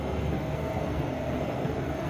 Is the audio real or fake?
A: fake